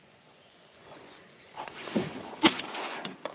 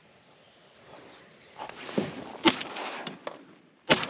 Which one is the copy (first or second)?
first